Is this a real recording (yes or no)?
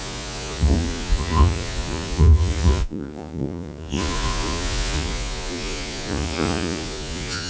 no